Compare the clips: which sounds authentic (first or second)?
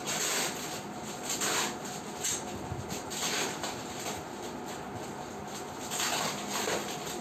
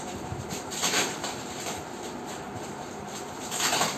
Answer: first